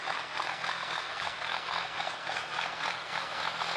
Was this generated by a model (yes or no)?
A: yes